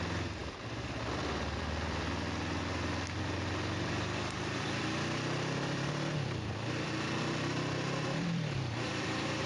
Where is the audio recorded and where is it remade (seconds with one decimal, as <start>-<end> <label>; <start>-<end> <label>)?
0.0-9.5 remade